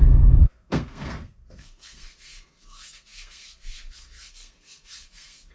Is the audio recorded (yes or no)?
no